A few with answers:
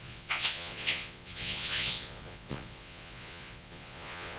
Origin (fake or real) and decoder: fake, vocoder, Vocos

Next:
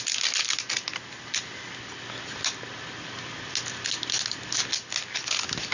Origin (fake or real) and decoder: real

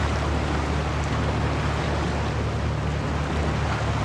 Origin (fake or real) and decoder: real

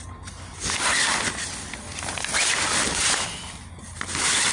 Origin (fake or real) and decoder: real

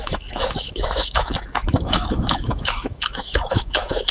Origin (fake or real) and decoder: fake, autoencoder, DAC-VAE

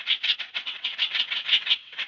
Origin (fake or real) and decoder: fake, vocoder, WaveNeXt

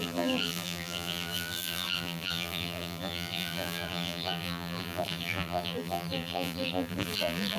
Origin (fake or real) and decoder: fake, vocoder, BigVGAN v2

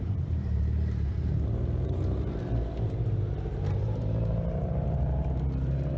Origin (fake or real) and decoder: fake, vocoder, BigVGAN v2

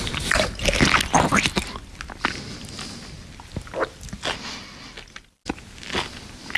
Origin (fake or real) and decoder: real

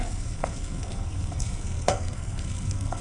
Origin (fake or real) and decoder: fake, codec, SNAC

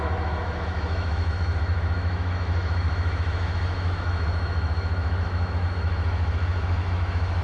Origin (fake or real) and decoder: fake, autoencoder, DAC-VAE